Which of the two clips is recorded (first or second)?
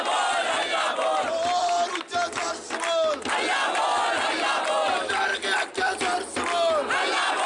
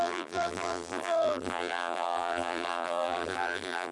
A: first